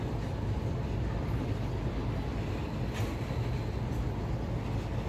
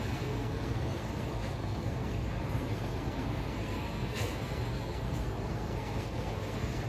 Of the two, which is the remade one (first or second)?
second